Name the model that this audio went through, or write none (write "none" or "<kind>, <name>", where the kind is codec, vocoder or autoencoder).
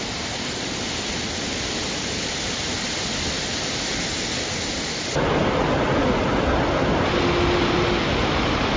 none